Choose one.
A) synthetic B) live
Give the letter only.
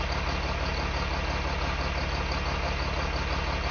B